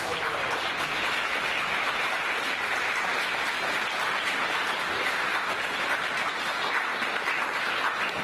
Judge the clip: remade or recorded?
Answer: recorded